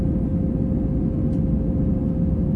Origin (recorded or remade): recorded